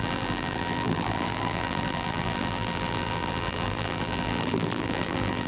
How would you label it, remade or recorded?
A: remade